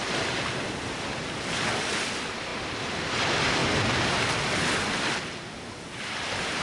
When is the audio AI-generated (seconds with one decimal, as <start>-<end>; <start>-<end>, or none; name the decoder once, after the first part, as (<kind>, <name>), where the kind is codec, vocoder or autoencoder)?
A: 0.0-1.9 (vocoder, BigVGAN v2); 3.6-5.9